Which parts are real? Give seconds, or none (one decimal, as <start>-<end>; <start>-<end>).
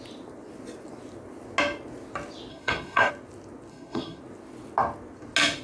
0.0-2.5; 3.1-3.7; 4.2-5.6